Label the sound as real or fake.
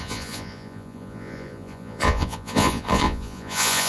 fake